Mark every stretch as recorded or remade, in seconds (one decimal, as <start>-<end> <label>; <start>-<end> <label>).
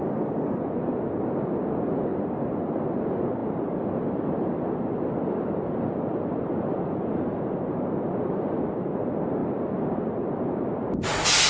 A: 0.0-3.4 recorded; 3.4-7.6 remade; 7.6-11.5 recorded